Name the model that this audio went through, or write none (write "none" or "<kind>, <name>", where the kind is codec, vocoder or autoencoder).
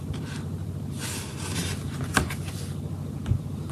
vocoder, BigVGAN v2